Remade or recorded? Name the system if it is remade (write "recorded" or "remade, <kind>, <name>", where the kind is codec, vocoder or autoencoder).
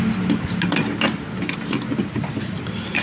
recorded